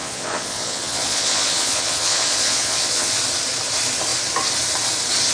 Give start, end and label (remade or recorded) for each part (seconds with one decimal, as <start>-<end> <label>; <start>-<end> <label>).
0.0-3.2 remade; 3.2-5.3 recorded